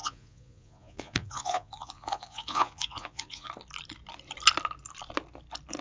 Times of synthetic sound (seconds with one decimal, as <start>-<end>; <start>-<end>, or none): 0.0-3.5